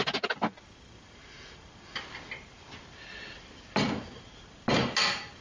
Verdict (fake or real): real